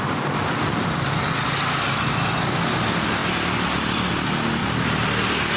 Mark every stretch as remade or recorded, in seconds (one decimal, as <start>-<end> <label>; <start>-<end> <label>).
0.0-5.6 recorded